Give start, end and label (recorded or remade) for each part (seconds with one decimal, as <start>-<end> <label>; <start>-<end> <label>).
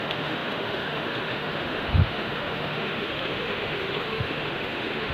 0.0-5.1 remade